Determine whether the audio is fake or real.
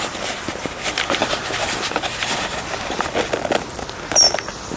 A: fake